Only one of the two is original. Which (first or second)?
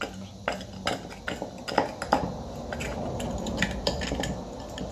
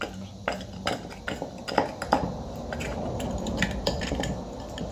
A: first